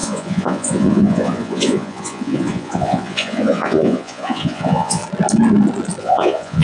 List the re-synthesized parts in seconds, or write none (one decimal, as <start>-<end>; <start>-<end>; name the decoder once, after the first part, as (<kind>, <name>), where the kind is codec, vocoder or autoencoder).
0.0-5.0 (vocoder, Vocos); 6.0-6.6